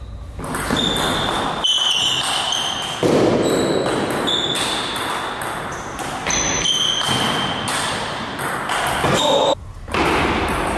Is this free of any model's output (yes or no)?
yes